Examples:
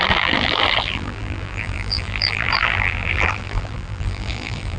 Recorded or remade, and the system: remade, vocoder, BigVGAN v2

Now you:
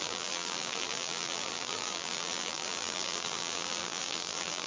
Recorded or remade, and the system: remade, vocoder, BigVGAN v2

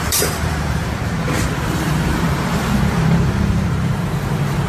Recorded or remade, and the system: remade, vocoder, BigVGAN v2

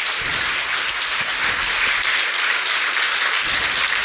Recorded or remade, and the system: recorded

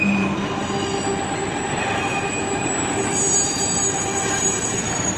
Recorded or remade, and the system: recorded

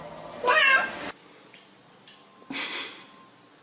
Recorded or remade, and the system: recorded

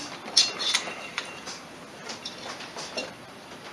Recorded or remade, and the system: remade, vocoder, BigVGAN v2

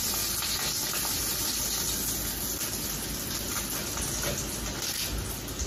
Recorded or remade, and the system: recorded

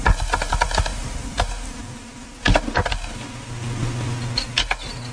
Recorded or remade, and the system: recorded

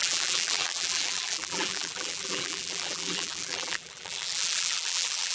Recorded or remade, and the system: remade, vocoder, BigVGAN v2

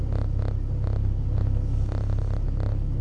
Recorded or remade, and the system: recorded